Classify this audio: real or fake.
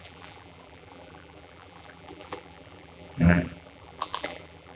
fake